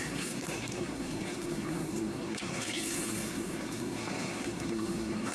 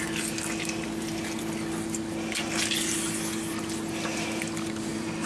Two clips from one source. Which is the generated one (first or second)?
first